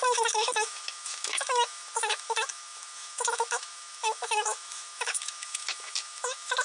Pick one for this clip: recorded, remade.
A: remade